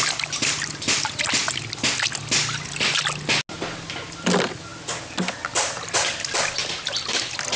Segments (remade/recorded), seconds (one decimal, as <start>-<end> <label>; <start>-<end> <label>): 0.0-7.6 recorded